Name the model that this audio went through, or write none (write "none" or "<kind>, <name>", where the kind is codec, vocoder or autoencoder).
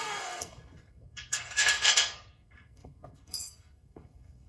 codec, SNAC